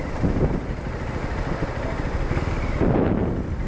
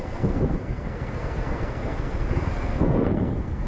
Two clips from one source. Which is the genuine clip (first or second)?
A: first